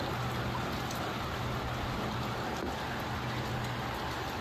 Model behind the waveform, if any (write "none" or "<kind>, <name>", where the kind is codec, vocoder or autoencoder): none